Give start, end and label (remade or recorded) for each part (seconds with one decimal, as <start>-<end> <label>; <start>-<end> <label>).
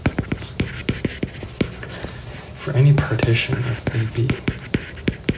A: 0.0-2.5 remade; 2.5-3.4 recorded; 3.4-5.4 remade